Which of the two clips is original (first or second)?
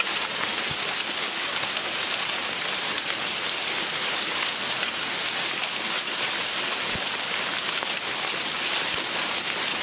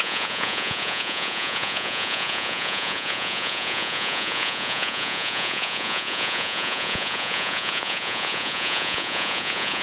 first